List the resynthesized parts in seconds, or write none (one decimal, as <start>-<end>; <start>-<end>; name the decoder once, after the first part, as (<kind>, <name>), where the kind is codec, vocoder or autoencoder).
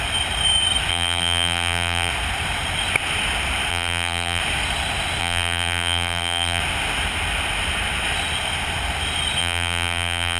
0.9-2.1 (vocoder, BigVGAN v2); 3.7-4.4; 5.2-6.6; 9.4-10.4